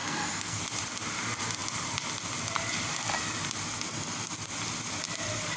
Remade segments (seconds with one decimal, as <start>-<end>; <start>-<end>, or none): 0.0-0.6